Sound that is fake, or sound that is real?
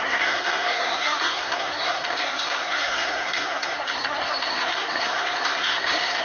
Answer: fake